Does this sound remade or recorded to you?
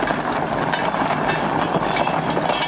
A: recorded